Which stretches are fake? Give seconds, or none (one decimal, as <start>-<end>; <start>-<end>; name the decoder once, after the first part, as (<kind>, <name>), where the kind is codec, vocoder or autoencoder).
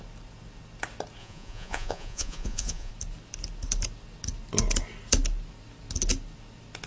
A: 1.2-2.9 (vocoder, Vocos)